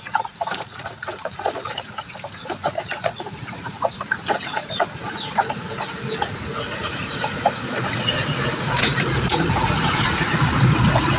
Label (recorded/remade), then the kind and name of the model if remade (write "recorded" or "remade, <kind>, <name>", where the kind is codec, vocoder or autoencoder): remade, vocoder, Vocos